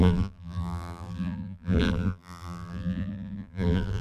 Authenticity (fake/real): fake